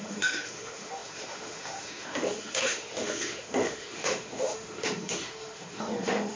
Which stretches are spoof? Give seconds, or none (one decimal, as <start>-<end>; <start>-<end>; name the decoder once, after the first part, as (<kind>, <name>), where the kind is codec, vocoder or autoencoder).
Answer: 0.0-6.4 (autoencoder, DAC-VAE)